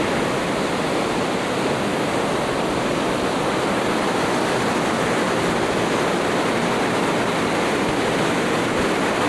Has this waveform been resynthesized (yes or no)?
no